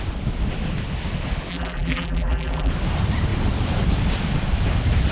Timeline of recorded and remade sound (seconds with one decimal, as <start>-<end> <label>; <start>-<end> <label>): 0.0-1.5 recorded; 1.5-2.7 remade; 2.7-5.1 recorded